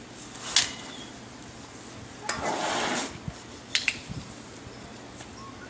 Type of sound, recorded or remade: recorded